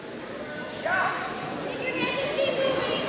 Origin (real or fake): real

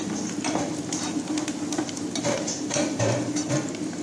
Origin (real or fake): real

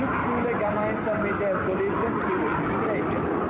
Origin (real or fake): real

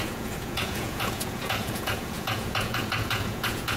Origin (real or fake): fake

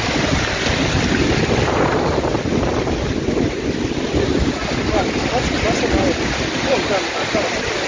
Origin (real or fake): real